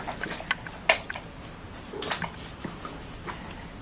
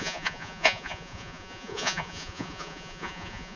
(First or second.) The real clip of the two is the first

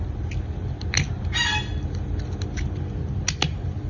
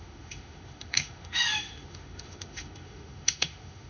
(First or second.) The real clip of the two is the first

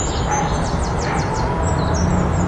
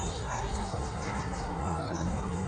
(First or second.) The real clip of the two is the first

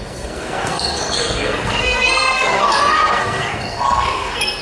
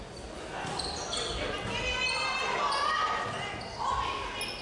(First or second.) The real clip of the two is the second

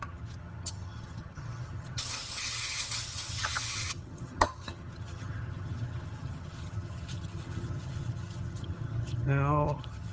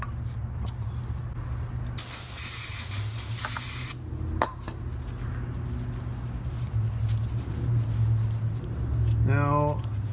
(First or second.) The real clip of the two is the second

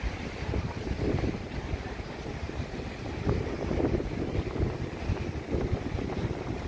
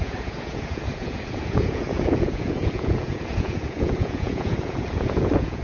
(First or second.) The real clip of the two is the first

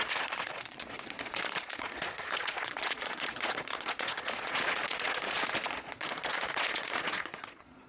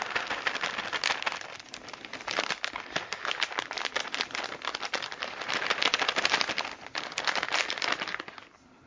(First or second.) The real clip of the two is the second